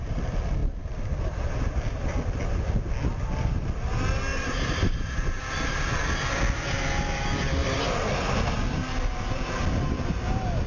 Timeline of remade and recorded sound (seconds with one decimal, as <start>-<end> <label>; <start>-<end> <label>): 0.0-4.3 recorded; 4.3-5.9 remade; 5.9-7.6 recorded; 7.6-8.1 remade; 8.1-10.7 recorded